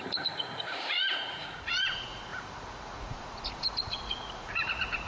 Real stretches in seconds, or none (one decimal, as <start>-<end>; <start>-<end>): none